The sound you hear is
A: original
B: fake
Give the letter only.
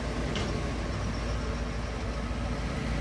A